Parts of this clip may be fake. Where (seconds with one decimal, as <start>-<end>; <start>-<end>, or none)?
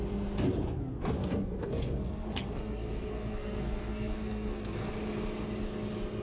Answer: 1.2-4.9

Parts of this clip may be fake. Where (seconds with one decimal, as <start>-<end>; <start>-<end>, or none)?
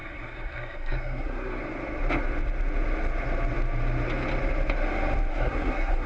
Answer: 0.0-1.6; 5.3-6.1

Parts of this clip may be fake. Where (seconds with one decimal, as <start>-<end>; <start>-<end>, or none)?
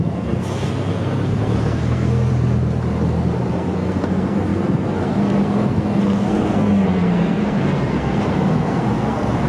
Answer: 0.0-2.3; 3.5-9.5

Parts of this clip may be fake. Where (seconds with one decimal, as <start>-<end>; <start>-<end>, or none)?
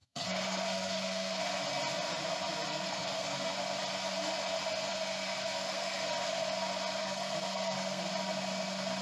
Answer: 0.0-1.4; 2.7-3.5; 4.9-6.1; 7.0-8.0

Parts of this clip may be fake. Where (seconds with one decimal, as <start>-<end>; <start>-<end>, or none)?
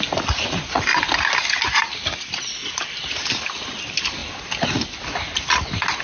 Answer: none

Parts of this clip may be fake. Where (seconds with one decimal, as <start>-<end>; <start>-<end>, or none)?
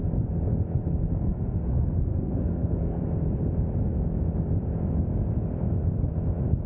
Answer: 1.3-3.0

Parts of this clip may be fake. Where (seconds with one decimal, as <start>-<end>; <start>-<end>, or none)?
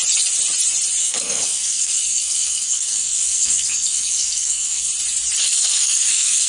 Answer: 1.0-4.9; 5.4-6.5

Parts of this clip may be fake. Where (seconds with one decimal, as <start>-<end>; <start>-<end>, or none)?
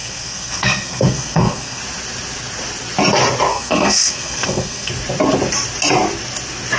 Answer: 0.0-1.8; 3.5-4.9